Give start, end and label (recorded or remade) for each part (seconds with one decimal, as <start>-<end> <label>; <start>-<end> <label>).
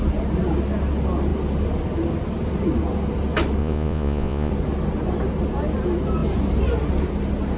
0.0-3.6 recorded; 3.6-4.5 remade; 4.5-7.6 recorded